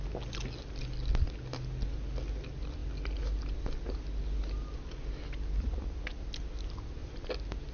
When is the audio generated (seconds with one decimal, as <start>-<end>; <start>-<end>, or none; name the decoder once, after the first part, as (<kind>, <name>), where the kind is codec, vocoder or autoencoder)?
none